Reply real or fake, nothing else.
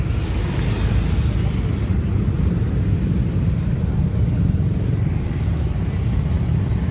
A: real